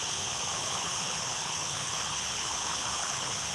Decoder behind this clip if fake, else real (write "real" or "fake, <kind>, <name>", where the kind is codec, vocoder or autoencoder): fake, codec, HILCodec